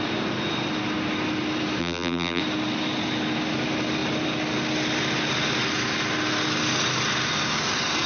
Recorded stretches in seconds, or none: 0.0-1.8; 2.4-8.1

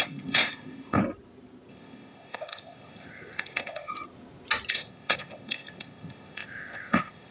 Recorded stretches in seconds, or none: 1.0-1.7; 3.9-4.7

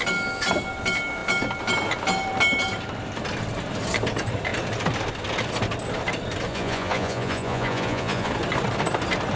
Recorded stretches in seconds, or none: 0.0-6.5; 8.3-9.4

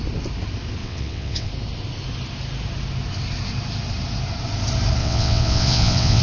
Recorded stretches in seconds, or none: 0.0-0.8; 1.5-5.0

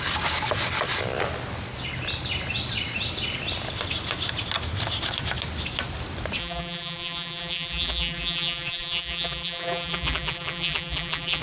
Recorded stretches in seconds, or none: 0.0-6.4

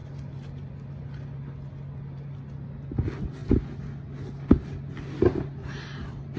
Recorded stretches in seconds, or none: 0.0-6.4